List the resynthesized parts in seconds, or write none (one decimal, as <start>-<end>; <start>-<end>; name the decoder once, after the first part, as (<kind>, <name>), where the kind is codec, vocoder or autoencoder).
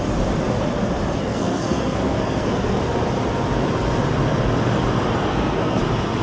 1.2-2.8 (codec, SNAC); 5.3-5.8